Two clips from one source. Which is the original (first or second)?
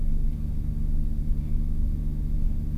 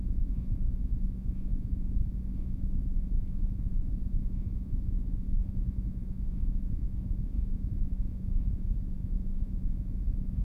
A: first